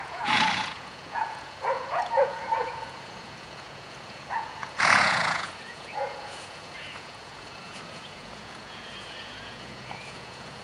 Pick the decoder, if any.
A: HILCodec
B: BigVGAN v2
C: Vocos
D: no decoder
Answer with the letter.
C